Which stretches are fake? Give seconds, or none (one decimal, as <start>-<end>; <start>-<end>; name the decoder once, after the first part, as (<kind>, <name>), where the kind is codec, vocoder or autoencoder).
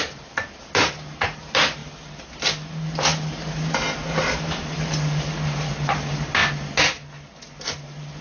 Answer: none